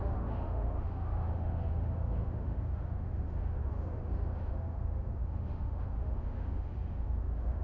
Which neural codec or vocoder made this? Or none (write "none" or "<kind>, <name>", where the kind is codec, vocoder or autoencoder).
autoencoder, DAC-VAE